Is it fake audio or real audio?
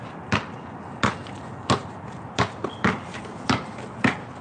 real